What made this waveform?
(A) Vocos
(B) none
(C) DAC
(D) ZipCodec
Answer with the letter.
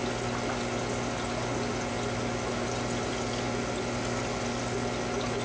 B